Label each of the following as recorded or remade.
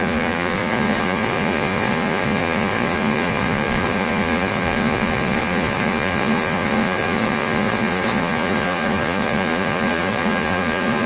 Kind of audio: remade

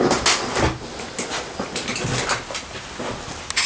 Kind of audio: recorded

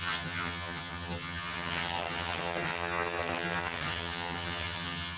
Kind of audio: remade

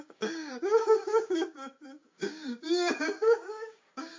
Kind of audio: remade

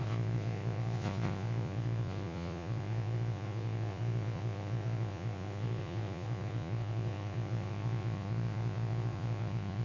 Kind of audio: remade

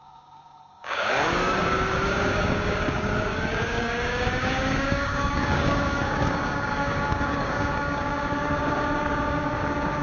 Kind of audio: remade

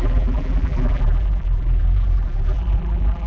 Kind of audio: remade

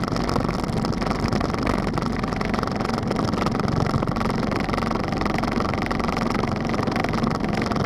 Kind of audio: recorded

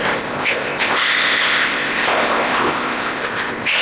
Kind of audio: remade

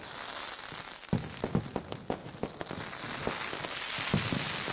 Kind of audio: recorded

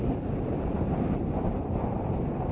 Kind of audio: remade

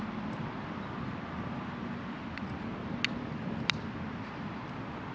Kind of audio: recorded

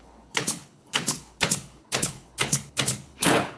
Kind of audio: remade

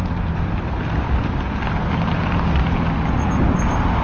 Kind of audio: recorded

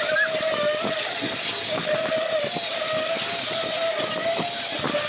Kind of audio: recorded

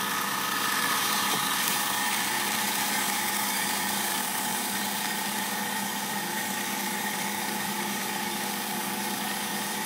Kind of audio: remade